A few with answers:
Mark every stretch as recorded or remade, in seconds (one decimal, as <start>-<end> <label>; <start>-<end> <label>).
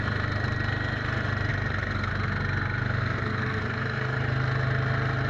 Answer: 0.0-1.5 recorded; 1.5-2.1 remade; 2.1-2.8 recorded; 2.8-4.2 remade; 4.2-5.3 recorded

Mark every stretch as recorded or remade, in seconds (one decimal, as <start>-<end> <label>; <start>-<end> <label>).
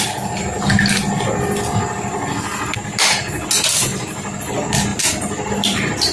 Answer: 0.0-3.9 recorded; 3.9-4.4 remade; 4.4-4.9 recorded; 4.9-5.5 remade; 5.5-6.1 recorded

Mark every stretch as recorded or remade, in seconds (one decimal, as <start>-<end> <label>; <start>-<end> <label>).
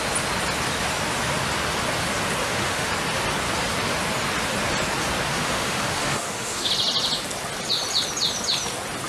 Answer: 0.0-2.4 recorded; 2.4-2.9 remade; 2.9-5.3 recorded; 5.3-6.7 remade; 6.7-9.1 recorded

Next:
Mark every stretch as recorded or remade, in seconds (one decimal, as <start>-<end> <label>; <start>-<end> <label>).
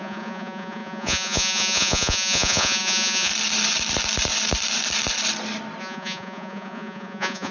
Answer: 0.0-3.3 remade; 3.3-5.8 recorded; 5.8-7.5 remade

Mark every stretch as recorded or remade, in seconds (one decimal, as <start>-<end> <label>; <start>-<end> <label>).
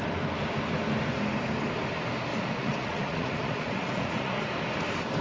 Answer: 0.0-2.3 recorded; 2.3-4.4 remade; 4.4-5.2 recorded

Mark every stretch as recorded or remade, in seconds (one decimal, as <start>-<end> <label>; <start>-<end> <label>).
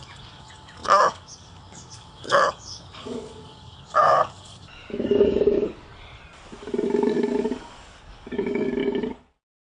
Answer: 0.0-5.9 remade; 5.9-6.9 recorded; 6.9-8.8 remade; 8.8-9.6 recorded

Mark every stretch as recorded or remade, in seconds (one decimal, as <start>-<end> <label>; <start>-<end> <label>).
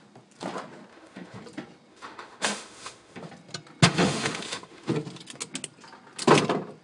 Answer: 0.0-0.9 recorded; 0.9-1.4 remade; 1.4-1.9 recorded; 1.9-3.3 remade; 3.3-3.9 recorded; 3.9-4.9 remade; 4.9-6.8 recorded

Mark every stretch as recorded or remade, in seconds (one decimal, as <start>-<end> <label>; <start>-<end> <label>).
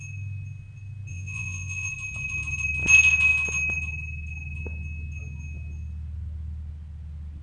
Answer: 0.0-1.1 recorded; 1.1-1.9 remade; 1.9-7.4 recorded